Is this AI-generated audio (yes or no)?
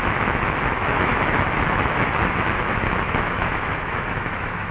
yes